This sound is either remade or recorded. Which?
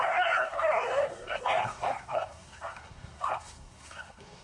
remade